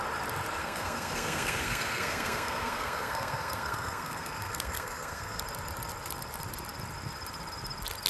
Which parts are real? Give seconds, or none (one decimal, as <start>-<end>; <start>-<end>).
0.0-0.6; 5.4-8.1